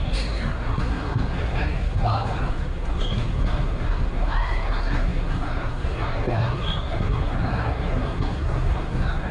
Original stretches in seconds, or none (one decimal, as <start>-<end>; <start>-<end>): none